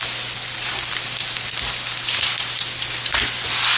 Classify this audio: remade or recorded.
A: recorded